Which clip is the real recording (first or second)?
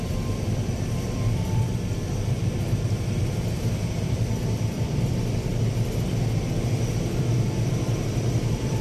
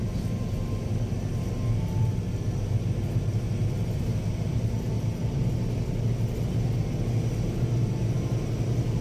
second